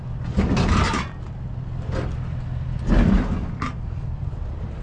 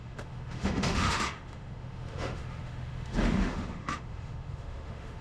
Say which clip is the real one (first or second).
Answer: first